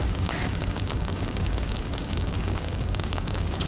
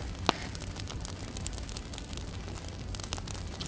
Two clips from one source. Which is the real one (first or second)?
second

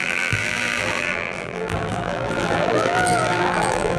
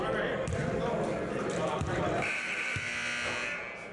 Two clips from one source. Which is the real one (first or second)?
second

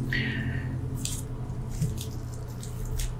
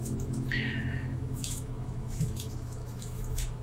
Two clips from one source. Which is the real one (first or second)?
first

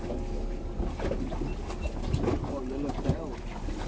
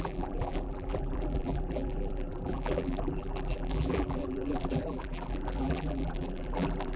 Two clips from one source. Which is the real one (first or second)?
first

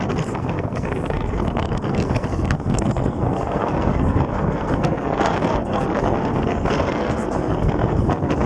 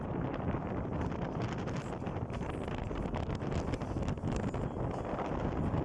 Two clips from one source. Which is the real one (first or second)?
second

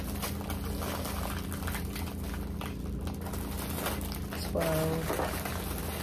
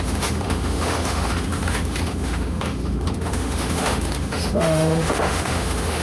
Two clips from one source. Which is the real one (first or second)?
first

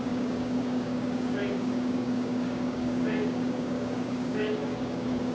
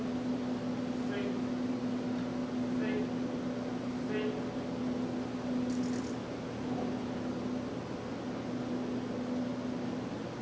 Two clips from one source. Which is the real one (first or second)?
second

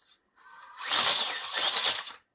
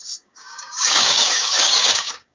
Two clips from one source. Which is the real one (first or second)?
first